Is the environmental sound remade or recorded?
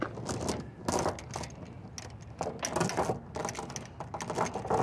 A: recorded